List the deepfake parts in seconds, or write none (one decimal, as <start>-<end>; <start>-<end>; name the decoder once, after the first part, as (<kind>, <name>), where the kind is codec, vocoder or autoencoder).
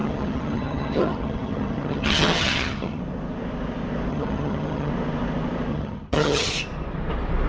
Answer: 0.0-3.0 (vocoder, HiFi-GAN); 4.1-4.9; 5.7-6.5